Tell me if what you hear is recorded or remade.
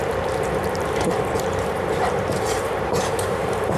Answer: remade